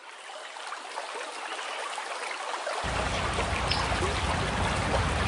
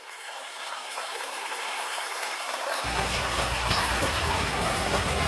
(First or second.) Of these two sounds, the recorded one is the first